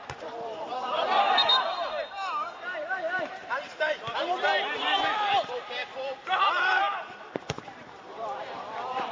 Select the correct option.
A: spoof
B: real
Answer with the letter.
A